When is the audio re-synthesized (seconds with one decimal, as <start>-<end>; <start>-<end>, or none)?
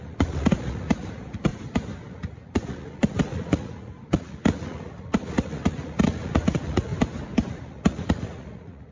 0.0-1.5; 2.1-6.9; 7.5-8.9